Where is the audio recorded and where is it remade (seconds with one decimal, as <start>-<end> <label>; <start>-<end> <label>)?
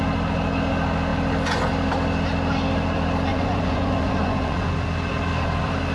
0.0-3.3 recorded; 3.3-4.7 remade; 4.7-5.9 recorded